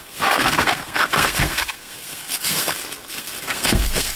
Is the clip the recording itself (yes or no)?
no